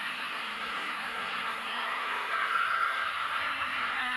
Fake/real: fake